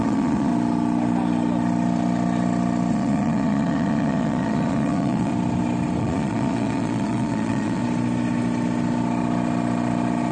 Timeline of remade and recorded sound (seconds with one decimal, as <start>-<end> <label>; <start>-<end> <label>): 0.0-0.5 remade; 0.5-2.9 recorded; 2.9-5.3 remade; 5.3-6.0 recorded; 6.0-7.8 remade; 7.8-10.3 recorded